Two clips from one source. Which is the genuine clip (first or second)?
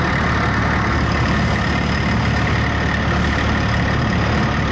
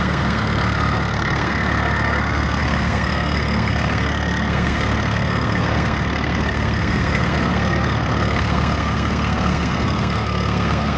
first